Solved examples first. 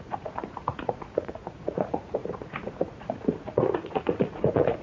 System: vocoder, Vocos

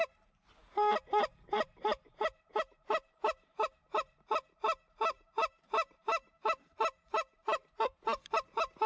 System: vocoder, BigVGAN v2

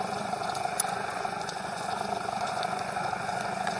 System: vocoder, Vocos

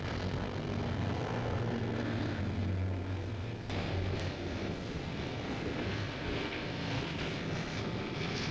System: codec, SNAC